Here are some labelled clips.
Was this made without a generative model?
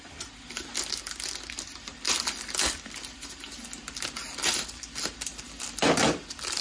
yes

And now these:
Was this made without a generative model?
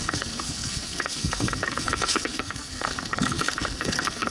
no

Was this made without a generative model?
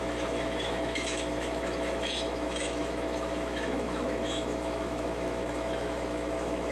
no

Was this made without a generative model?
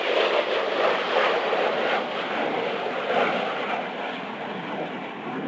yes